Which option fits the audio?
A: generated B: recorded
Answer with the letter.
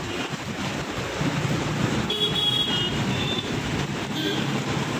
A